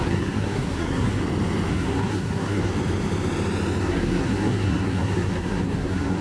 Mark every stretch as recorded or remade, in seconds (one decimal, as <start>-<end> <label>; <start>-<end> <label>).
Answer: 0.0-1.2 remade; 1.2-1.7 recorded; 1.7-2.7 remade; 2.7-3.8 recorded; 3.8-6.2 remade